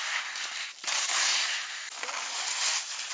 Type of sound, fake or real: real